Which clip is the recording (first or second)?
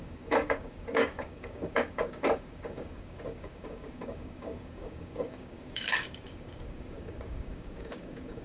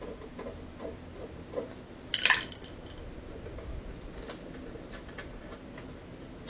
second